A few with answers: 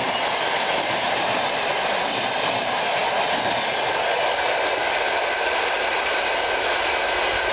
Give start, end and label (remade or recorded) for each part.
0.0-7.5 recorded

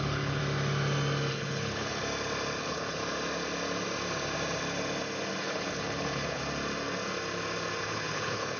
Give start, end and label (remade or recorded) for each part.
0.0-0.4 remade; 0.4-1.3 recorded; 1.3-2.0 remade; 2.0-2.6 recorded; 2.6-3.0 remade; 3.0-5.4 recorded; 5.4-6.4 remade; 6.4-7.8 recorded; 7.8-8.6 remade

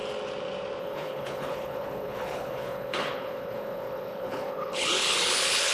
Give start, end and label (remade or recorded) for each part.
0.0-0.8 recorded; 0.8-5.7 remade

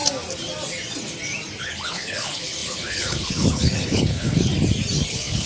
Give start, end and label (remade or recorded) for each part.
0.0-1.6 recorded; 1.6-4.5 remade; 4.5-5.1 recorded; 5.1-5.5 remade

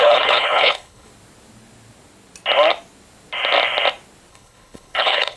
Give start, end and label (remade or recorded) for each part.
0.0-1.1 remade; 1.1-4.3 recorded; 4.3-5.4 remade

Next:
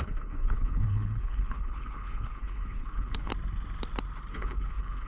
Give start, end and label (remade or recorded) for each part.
0.0-3.3 remade; 3.3-4.3 recorded; 4.3-5.1 remade